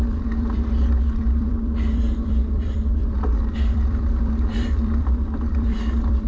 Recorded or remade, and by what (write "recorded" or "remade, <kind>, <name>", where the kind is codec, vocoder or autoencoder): remade, vocoder, BigVGAN v2